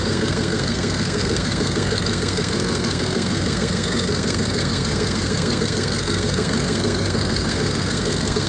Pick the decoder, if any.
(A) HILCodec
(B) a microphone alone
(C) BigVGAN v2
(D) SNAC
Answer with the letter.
D